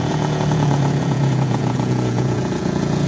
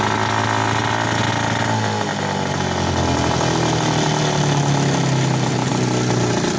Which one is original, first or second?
second